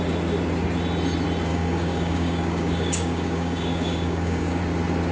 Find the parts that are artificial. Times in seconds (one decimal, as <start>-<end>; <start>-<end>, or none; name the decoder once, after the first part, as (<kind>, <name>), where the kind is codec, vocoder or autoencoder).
1.5-4.6 (codec, DAC)